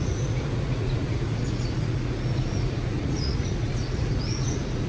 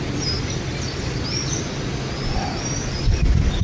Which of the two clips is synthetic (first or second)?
first